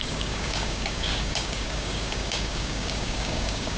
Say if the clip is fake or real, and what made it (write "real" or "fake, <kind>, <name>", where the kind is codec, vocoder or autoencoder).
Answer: fake, codec, DAC